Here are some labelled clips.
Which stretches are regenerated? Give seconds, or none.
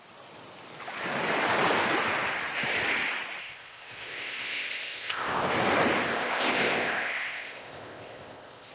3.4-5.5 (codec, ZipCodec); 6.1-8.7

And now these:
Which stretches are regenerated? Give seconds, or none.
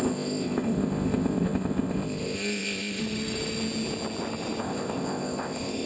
0.0-3.0 (codec, ZipCodec); 4.6-5.9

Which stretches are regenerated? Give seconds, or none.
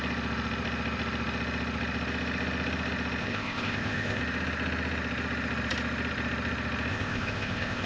3.2-4.2 (codec, ZipCodec); 6.9-7.9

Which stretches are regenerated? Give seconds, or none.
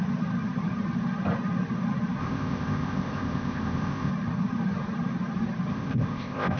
2.2-4.1 (codec, ZipCodec); 5.7-6.6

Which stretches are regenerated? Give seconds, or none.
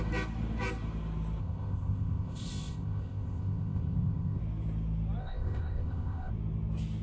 1.4-4.4 (codec, ZipCodec); 5.2-6.3